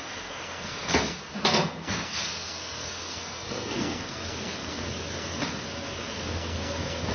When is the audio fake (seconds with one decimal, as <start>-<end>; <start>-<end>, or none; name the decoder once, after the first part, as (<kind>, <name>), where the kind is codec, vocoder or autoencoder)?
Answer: 0.0-7.1 (codec, SNAC)